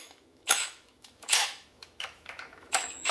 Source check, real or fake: fake